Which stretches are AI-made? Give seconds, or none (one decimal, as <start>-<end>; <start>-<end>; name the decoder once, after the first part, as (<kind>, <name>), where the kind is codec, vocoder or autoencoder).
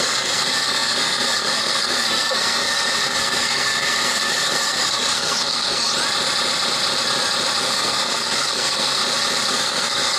0.0-5.9 (codec, SNAC); 7.6-9.0; 9.5-10.2